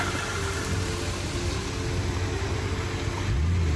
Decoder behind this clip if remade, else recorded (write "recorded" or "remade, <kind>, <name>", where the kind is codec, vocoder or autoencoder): recorded